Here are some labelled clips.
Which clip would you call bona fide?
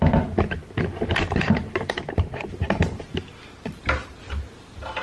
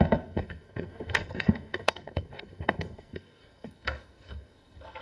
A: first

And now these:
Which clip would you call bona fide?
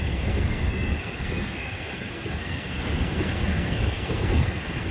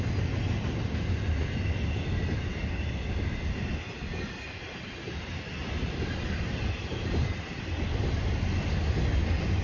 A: second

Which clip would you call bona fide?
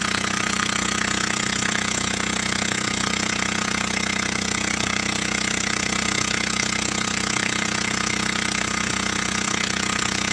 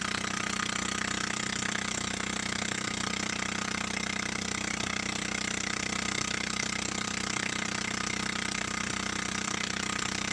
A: second